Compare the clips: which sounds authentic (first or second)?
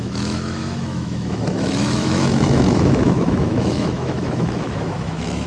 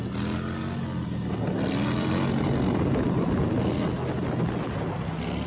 second